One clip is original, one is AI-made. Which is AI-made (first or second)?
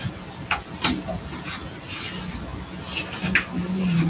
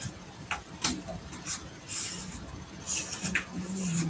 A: second